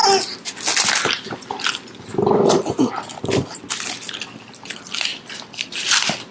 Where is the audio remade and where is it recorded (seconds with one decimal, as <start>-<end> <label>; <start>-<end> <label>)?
0.0-6.3 recorded

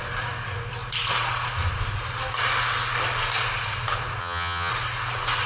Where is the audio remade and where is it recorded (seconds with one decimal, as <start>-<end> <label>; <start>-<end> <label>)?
0.0-4.2 recorded; 4.2-4.7 remade; 4.7-5.5 recorded

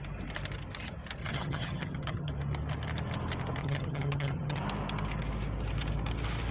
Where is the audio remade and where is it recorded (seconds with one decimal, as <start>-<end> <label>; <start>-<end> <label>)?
0.0-1.2 recorded; 1.2-2.3 remade; 2.3-3.6 recorded; 3.6-4.6 remade; 4.6-6.5 recorded

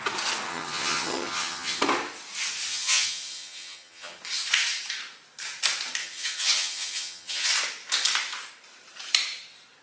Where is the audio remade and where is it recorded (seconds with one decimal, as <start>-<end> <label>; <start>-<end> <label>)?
0.0-0.5 recorded; 0.5-1.8 remade; 1.8-2.7 recorded; 2.7-4.2 remade; 4.2-6.0 recorded; 6.0-7.5 remade; 7.5-9.8 recorded

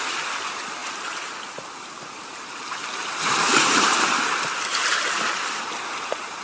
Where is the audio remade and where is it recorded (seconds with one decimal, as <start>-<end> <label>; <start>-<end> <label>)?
0.0-6.4 recorded

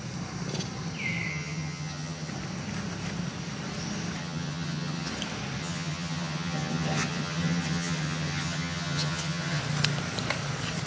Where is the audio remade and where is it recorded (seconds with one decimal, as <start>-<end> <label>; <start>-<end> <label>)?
0.0-1.3 recorded; 1.3-2.3 remade; 2.3-4.2 recorded; 4.2-5.1 remade; 5.1-5.6 recorded; 5.6-9.6 remade; 9.6-10.9 recorded

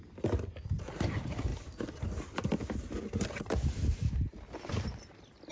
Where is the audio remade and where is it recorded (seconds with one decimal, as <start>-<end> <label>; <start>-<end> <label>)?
0.0-5.5 recorded